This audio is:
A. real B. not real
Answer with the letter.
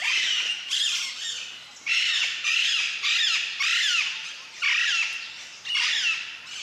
A